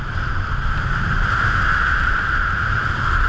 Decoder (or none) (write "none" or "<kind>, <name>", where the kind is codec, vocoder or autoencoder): none